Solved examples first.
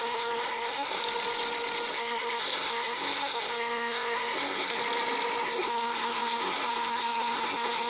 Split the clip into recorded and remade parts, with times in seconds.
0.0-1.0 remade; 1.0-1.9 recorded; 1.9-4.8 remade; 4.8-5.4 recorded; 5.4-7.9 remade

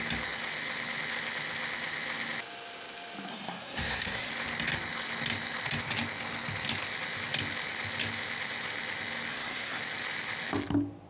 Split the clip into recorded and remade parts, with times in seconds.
0.0-3.3 recorded; 3.3-4.3 remade; 4.3-9.3 recorded; 9.3-9.8 remade; 9.8-11.1 recorded

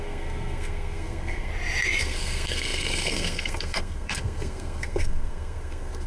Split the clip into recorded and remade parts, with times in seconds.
0.0-1.5 remade; 1.5-2.0 recorded; 2.0-6.1 remade

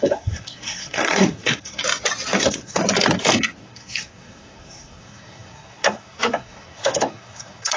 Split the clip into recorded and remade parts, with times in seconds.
0.0-1.8 remade; 1.8-2.4 recorded; 2.4-2.8 remade; 2.8-3.6 recorded; 3.6-7.8 remade

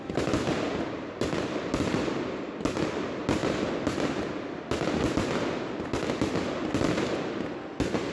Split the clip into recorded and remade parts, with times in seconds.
0.0-8.1 recorded

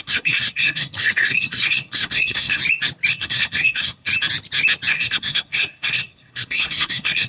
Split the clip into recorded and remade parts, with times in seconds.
0.0-2.6 remade; 2.6-3.1 recorded; 3.1-4.1 remade; 4.1-4.9 recorded; 4.9-7.3 remade

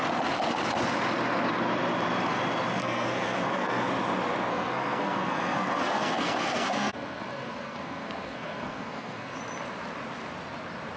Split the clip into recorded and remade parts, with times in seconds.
0.0-2.8 recorded; 2.8-3.9 remade; 3.9-4.5 recorded; 4.5-9.4 remade; 9.4-11.0 recorded